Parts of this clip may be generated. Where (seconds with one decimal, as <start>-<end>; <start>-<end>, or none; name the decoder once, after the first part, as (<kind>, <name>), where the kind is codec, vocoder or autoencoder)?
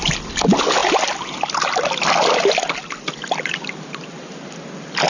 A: none